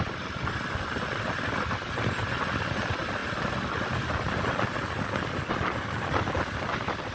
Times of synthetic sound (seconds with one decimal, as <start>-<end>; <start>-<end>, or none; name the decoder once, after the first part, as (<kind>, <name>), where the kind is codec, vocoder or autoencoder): none